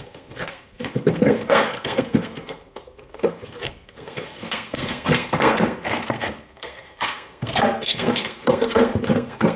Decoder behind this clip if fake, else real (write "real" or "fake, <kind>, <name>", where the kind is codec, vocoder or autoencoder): fake, codec, SNAC